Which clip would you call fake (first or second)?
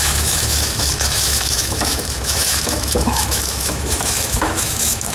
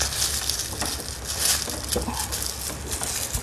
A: first